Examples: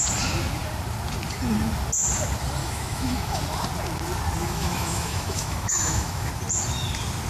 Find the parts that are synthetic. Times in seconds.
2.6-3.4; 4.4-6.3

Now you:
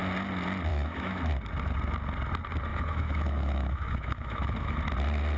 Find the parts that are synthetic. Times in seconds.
0.7-1.2; 2.7-4.8

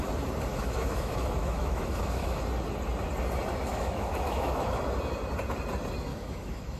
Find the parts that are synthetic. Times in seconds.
0.5-2.4; 3.7-4.8; 6.1-6.8